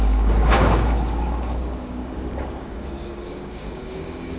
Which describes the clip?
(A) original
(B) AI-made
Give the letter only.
B